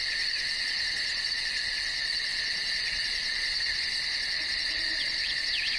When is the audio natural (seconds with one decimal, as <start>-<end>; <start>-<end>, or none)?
none